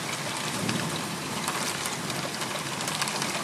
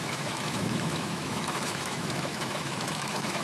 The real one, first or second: first